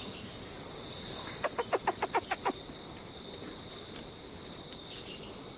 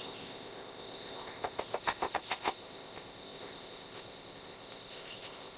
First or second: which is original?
first